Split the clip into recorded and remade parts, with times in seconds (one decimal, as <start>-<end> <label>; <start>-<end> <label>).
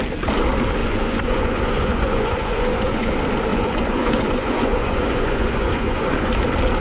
0.0-0.8 recorded; 0.8-3.1 remade; 3.1-3.5 recorded; 3.5-6.3 remade; 6.3-6.8 recorded